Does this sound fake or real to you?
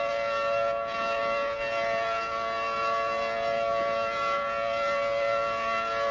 real